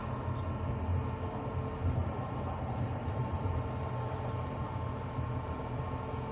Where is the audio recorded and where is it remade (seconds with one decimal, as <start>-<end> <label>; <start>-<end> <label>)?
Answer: 0.0-2.0 recorded; 2.0-5.8 remade; 5.8-6.3 recorded